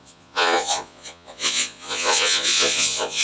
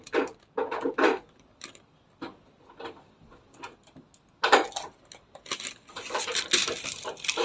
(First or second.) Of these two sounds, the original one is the second